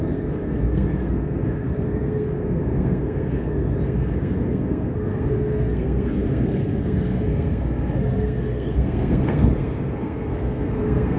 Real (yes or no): no